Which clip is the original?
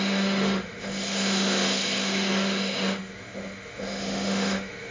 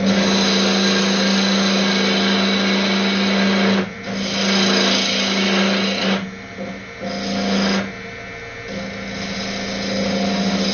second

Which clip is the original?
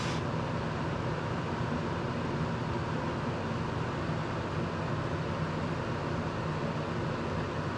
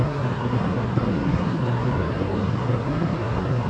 first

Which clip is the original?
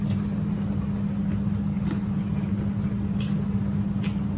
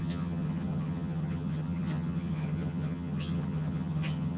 first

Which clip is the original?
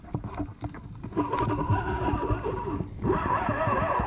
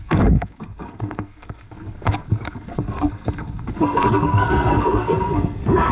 first